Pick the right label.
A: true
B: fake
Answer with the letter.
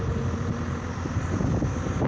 A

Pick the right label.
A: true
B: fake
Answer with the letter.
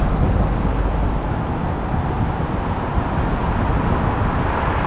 A